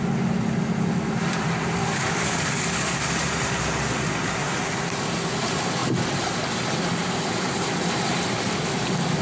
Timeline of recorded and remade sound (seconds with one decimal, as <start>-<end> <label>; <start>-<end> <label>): 0.0-1.8 recorded; 1.8-3.0 remade; 3.0-9.2 recorded